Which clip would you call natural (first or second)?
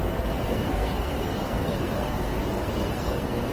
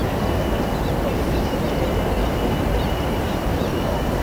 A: second